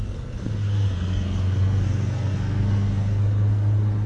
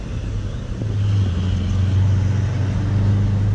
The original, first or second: second